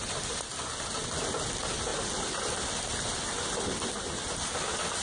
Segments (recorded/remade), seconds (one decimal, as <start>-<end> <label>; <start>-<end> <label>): 0.0-5.0 recorded